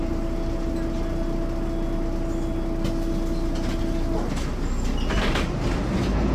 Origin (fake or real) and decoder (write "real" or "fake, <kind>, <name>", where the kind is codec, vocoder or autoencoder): real